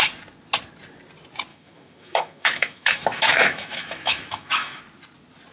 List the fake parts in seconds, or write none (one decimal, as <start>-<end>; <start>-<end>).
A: 1.5-4.8